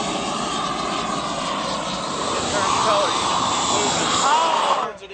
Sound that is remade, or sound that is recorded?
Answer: recorded